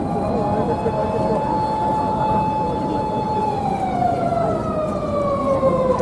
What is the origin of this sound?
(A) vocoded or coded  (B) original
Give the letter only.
B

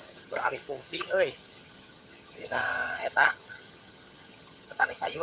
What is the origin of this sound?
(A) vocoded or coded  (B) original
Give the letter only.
A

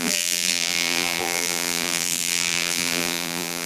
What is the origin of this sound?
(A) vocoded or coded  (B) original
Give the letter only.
A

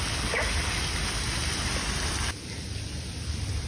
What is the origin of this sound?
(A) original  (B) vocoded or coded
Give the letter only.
A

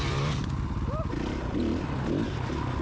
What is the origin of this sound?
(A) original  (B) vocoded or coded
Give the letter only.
A